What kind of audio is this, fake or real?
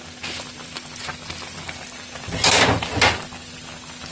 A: real